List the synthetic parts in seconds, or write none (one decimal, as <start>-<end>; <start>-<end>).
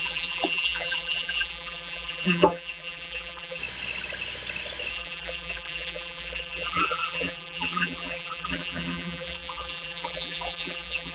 0.0-3.6; 4.9-11.1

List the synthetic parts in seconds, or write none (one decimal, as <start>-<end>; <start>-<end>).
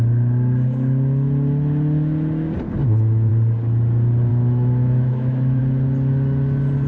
2.8-3.3; 4.3-5.6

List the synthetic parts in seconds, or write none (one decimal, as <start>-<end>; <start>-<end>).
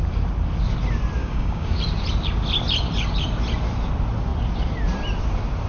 1.2-1.8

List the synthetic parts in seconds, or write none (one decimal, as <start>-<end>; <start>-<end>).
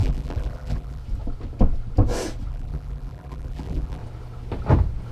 0.0-1.0; 2.5-4.0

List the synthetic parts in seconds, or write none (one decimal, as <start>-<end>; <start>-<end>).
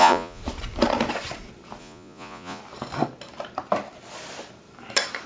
0.0-0.4; 1.8-2.6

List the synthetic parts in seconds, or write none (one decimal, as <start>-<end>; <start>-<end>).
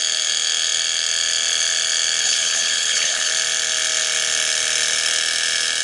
2.2-3.3